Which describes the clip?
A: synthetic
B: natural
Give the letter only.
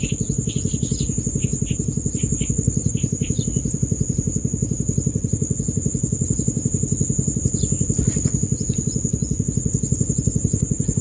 B